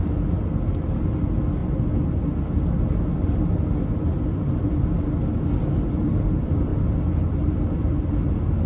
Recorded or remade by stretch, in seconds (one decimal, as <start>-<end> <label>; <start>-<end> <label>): 0.0-8.7 recorded